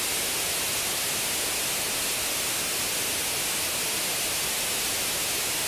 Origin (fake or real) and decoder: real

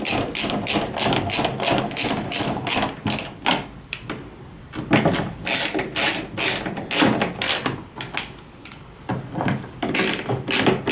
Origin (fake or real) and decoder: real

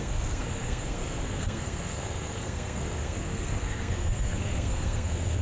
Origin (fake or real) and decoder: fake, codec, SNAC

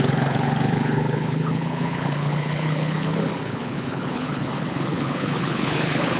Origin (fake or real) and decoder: fake, codec, HILCodec